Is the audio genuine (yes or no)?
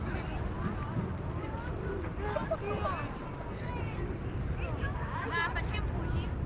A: yes